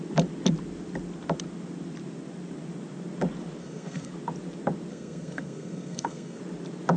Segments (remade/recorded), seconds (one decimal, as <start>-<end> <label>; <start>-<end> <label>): 0.0-3.6 recorded; 3.6-4.1 remade; 4.1-4.9 recorded; 4.9-6.4 remade; 6.4-7.0 recorded

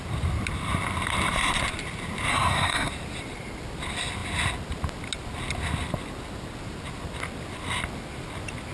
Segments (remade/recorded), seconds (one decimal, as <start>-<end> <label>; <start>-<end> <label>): 0.0-2.3 recorded; 2.3-2.9 remade; 2.9-8.7 recorded

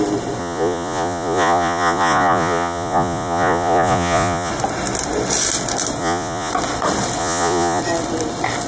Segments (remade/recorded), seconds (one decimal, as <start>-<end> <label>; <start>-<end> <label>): 0.0-0.4 recorded; 0.4-4.5 remade; 4.5-6.0 recorded; 6.0-6.5 remade; 6.5-7.2 recorded; 7.2-7.8 remade; 7.8-8.7 recorded

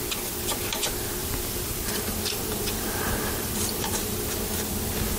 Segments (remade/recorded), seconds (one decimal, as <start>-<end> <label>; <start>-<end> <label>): 0.0-1.2 recorded; 1.2-4.3 remade; 4.3-5.2 recorded

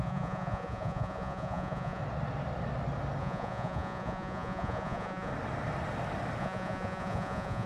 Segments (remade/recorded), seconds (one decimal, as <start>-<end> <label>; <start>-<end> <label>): 0.0-2.0 remade; 2.0-3.2 recorded; 3.2-5.3 remade; 5.3-6.4 recorded; 6.4-7.7 remade